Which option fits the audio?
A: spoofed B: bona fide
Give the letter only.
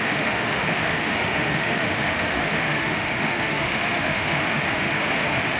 A